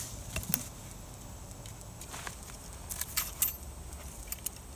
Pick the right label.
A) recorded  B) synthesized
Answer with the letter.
A